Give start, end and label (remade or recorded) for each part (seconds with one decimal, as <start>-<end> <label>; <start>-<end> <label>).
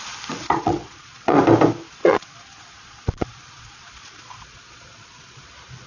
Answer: 0.0-0.4 recorded; 0.4-1.4 remade; 1.4-2.0 recorded; 2.0-5.5 remade; 5.5-5.9 recorded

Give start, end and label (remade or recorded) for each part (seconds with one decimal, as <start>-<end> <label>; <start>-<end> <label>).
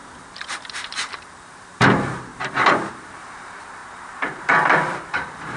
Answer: 0.0-1.3 recorded; 1.3-2.3 remade; 2.3-2.9 recorded; 2.9-5.6 remade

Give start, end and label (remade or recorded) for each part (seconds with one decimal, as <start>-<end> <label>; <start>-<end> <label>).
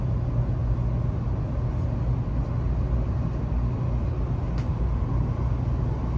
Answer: 0.0-6.2 recorded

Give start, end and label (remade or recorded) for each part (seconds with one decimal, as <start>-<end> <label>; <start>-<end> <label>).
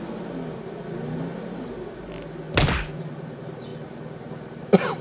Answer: 0.0-5.0 recorded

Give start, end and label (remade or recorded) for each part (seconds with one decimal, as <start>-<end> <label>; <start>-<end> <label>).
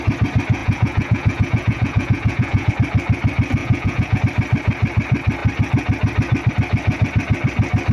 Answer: 0.0-0.6 recorded; 0.6-2.7 remade; 2.7-3.6 recorded; 3.6-4.2 remade; 4.2-7.9 recorded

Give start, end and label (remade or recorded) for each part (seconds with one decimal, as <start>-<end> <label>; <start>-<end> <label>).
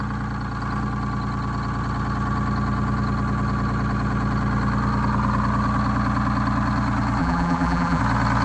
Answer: 0.0-7.2 recorded; 7.2-8.0 remade; 8.0-8.4 recorded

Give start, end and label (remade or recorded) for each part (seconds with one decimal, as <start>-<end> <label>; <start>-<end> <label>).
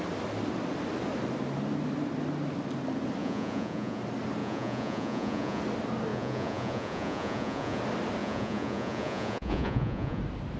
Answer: 0.0-3.2 recorded; 3.2-4.0 remade; 4.0-4.4 recorded; 4.4-5.6 remade; 5.6-6.1 recorded; 6.1-7.8 remade; 7.8-8.2 recorded; 8.2-10.2 remade; 10.2-10.6 recorded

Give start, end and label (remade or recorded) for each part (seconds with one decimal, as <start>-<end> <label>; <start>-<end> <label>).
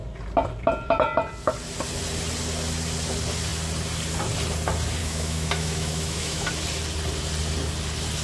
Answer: 0.0-5.0 recorded; 5.0-6.5 remade; 6.5-8.2 recorded